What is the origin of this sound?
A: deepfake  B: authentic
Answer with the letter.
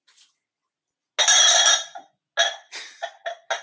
B